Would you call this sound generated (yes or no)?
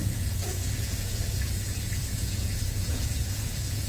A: yes